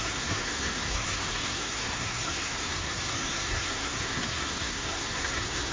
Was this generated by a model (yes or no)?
yes